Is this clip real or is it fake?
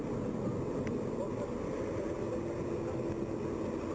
real